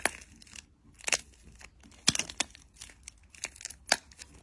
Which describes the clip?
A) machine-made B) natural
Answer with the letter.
B